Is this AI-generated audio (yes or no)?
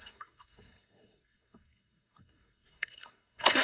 yes